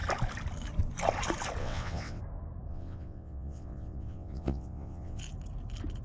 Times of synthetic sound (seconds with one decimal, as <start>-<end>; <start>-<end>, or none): 1.6-2.2; 2.7-5.2